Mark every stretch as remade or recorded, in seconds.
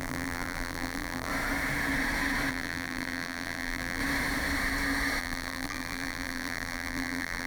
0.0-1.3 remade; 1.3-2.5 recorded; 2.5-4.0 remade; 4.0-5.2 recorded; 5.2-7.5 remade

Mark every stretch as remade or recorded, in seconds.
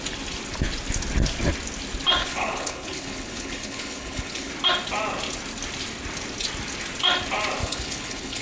0.0-2.2 recorded; 2.2-4.5 remade; 4.5-7.6 recorded; 7.6-8.4 remade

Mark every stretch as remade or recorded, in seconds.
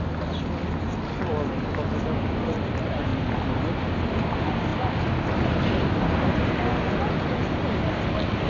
0.0-8.5 recorded